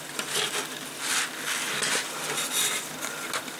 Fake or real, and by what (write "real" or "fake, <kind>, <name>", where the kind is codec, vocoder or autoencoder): real